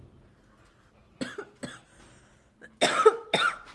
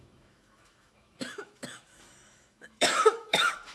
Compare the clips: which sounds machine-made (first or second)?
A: second